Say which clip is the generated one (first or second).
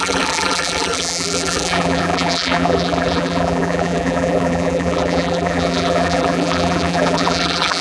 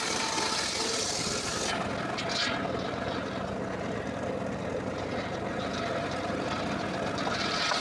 first